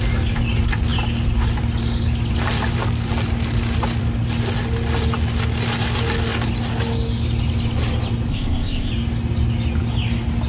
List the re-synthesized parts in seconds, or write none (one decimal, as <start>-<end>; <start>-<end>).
8.3-8.9